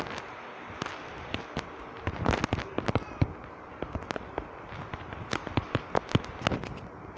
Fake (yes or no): no